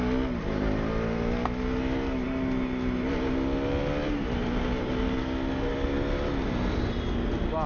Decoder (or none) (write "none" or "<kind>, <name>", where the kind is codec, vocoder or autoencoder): none